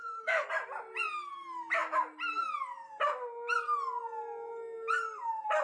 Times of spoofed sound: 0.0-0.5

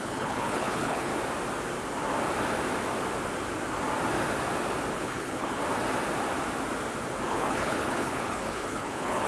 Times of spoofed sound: 0.0-1.1; 4.9-5.6; 7.3-9.3

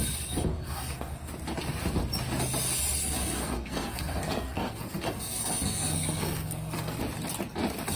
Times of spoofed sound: 0.5-1.3; 3.0-7.0

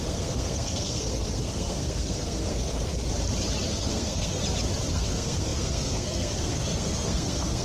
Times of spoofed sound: 0.0-2.9; 3.7-4.4; 4.9-7.6

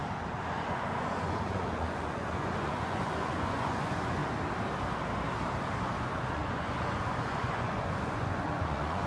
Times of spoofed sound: 0.5-4.2; 6.0-9.1

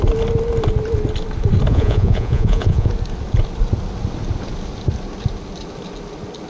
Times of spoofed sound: 1.7-2.9